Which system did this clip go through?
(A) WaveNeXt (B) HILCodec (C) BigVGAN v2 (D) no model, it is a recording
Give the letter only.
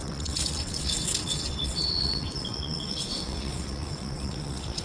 A